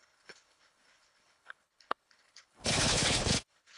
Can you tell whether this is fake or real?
fake